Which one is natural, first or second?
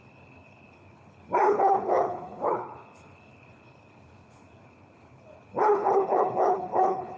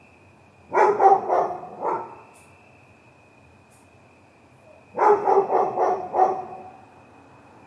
second